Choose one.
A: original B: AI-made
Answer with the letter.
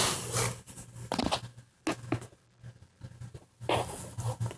A